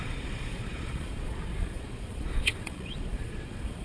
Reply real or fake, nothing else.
fake